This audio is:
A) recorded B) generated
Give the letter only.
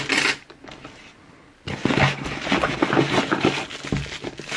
A